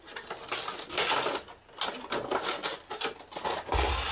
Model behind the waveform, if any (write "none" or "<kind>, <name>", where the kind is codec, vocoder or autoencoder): none